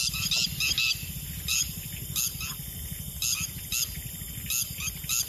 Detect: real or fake real